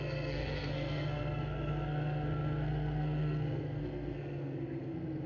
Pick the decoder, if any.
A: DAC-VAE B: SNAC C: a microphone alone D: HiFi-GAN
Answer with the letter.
B